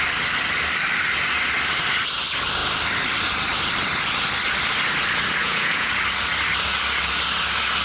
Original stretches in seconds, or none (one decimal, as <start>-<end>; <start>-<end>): 0.0-5.4; 5.9-7.8